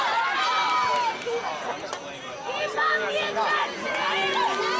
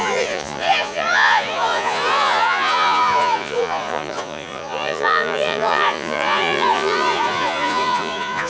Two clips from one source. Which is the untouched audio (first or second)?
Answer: first